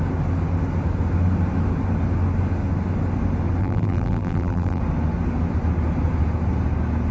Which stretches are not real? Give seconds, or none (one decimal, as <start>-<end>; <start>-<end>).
3.6-4.8